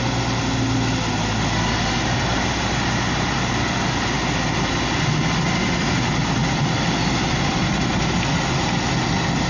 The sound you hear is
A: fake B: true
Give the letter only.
B